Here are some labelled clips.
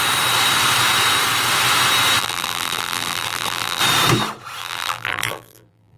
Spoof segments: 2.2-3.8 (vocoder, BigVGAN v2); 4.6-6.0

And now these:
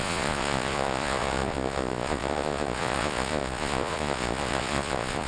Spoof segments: 0.0-5.3 (vocoder, Vocos)

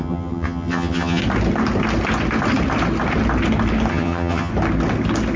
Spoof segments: 0.0-1.2 (vocoder, HiFi-GAN); 3.9-4.5

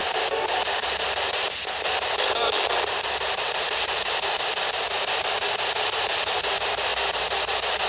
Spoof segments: none

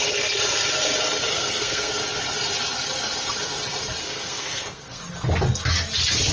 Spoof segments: 1.3-1.9 (codec, SNAC); 4.0-5.0